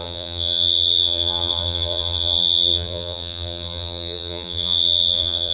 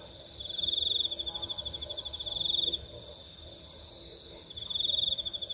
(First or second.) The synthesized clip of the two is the first